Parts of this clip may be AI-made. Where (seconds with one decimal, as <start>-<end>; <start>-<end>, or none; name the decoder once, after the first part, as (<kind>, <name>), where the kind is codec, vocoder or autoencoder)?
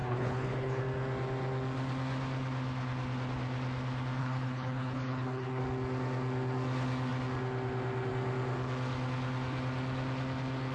0.0-0.8 (codec, HILCodec); 4.2-5.6